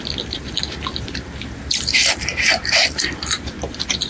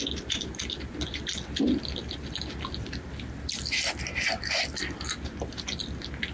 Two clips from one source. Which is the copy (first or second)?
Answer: first